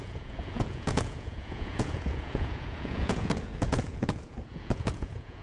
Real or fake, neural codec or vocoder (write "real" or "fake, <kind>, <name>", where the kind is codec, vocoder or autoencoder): fake, vocoder, Vocos